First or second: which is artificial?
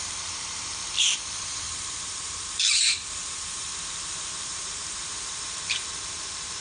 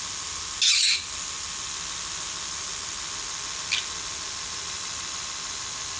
first